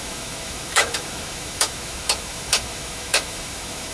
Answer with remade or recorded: remade